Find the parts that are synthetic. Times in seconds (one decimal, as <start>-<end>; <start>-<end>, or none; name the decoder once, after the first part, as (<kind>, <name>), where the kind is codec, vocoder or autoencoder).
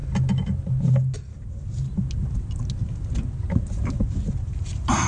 none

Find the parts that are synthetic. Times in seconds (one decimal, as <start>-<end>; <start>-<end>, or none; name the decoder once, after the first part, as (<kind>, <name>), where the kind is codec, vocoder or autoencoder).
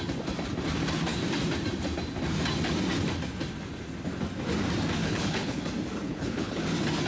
5.0-5.6 (codec, HILCodec); 6.1-6.6